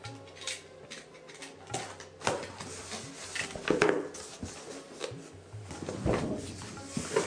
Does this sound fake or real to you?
real